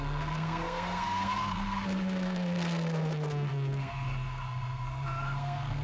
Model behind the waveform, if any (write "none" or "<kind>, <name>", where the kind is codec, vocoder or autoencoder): codec, SNAC